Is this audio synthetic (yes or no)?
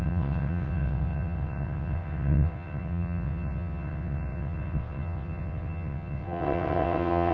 yes